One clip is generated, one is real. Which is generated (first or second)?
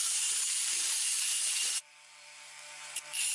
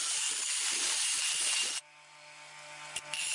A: first